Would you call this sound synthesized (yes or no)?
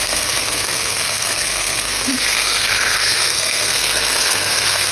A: yes